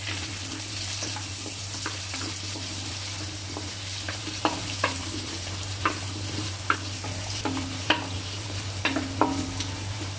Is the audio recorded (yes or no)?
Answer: no